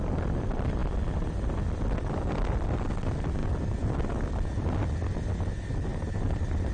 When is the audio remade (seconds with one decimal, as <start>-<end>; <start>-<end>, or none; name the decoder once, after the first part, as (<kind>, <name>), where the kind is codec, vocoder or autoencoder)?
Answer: 5.9-6.7 (vocoder, BigVGAN v2)